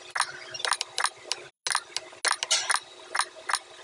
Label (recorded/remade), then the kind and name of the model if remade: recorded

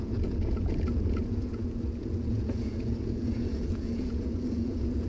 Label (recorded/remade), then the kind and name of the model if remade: remade, vocoder, Vocos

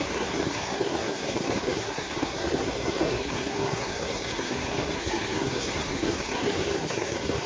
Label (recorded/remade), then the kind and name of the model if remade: remade, codec, SNAC